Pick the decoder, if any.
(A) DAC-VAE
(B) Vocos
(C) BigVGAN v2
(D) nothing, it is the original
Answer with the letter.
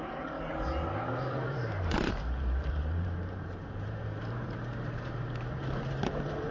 C